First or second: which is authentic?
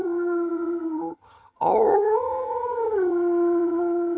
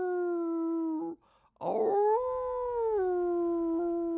second